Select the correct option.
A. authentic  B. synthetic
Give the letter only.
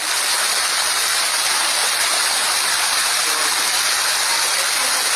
A